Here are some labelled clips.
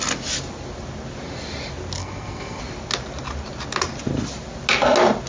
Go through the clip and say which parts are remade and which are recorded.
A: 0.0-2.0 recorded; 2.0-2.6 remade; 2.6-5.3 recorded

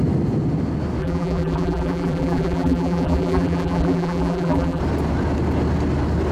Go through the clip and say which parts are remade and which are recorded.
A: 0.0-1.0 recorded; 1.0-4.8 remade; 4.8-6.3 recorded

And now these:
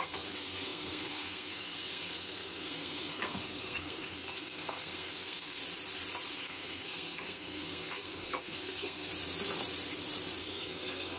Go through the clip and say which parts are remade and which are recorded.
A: 0.0-5.6 remade; 5.6-6.3 recorded; 6.3-9.1 remade; 9.1-10.4 recorded; 10.4-11.2 remade

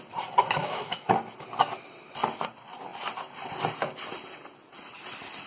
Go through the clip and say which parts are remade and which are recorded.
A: 0.0-0.6 recorded; 0.6-1.1 remade; 1.1-5.5 recorded